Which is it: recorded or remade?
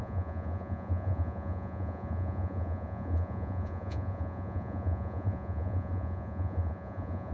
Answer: remade